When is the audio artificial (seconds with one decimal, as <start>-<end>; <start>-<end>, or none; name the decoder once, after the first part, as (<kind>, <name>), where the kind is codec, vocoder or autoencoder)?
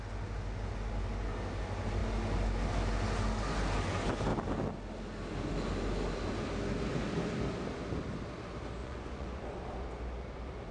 8.8-9.4 (vocoder, Vocos)